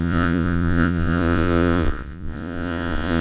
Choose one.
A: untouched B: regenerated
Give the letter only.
B